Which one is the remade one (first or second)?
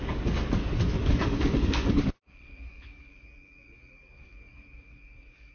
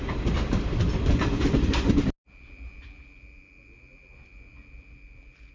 first